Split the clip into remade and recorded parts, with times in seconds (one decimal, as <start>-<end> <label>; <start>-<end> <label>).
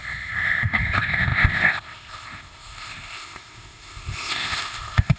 0.0-5.2 remade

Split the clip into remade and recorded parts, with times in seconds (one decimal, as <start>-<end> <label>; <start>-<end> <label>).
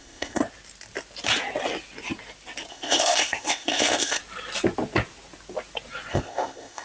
0.0-0.4 remade; 0.4-2.7 recorded; 2.7-4.2 remade; 4.2-6.1 recorded; 6.1-6.8 remade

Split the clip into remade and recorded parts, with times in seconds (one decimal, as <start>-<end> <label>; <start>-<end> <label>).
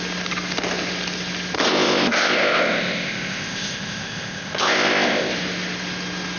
0.0-1.7 recorded; 1.7-5.3 remade; 5.3-6.4 recorded